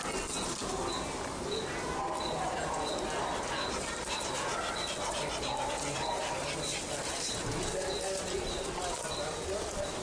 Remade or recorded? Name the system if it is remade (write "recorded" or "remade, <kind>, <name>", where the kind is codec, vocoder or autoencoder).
recorded